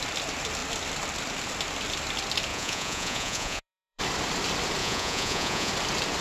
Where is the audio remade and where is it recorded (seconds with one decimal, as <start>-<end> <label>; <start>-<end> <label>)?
0.0-2.5 recorded; 2.5-4.0 remade; 4.0-4.8 recorded; 4.8-5.7 remade; 5.7-6.2 recorded